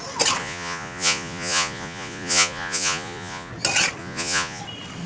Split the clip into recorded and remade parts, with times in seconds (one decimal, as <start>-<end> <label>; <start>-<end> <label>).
0.0-0.4 recorded; 0.4-3.5 remade; 3.5-4.0 recorded; 4.0-4.6 remade; 4.6-5.1 recorded